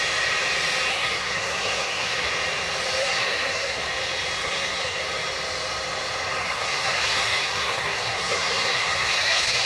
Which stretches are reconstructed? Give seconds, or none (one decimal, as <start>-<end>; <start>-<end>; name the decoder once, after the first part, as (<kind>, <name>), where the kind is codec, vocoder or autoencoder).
0.9-2.3 (codec, SNAC); 3.0-3.8; 4.4-5.0; 6.4-9.7